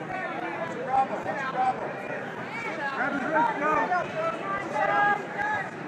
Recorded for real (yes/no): no